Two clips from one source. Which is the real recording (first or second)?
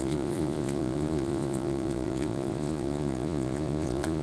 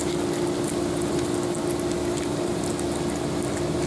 second